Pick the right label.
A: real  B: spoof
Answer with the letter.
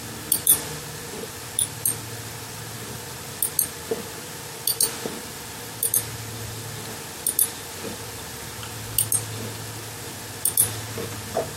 A